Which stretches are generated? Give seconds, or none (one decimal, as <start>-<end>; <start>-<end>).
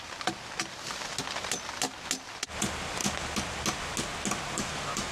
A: 0.0-1.1; 2.6-3.0; 4.4-5.1